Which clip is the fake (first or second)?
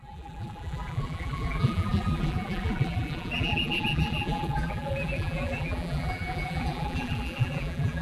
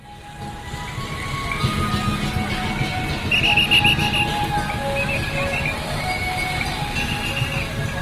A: first